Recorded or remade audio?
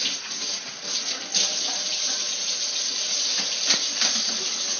recorded